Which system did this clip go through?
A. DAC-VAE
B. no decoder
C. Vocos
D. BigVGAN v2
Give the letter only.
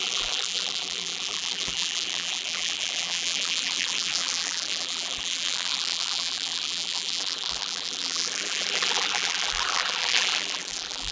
D